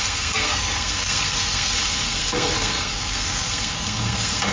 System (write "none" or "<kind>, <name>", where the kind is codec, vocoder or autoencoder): codec, SNAC